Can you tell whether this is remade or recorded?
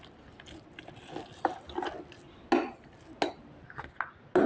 recorded